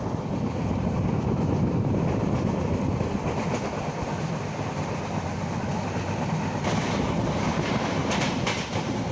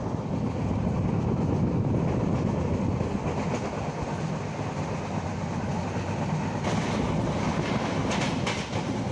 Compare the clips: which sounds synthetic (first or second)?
first